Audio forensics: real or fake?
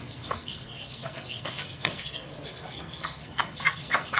fake